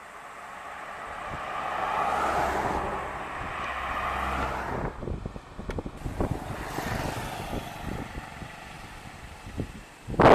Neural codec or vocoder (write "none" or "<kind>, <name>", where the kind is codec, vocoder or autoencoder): none